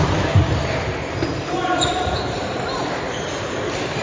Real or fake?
fake